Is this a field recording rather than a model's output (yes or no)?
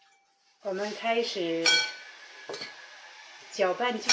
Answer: yes